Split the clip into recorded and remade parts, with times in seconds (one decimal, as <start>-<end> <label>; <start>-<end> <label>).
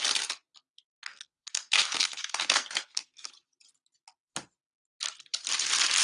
0.0-1.1 recorded; 1.1-3.3 remade; 3.3-6.0 recorded